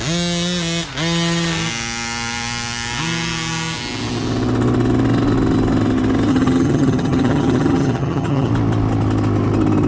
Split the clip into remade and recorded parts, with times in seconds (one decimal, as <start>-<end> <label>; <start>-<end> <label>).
0.0-6.3 recorded; 6.3-8.5 remade; 8.5-9.9 recorded